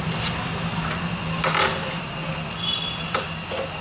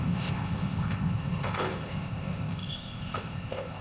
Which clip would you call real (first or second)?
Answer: first